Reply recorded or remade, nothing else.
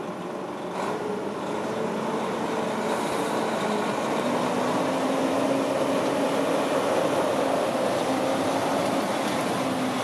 recorded